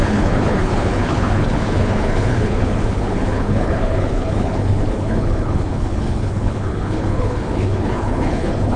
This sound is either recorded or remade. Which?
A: remade